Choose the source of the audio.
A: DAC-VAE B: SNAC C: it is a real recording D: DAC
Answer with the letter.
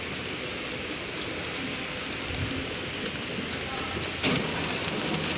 C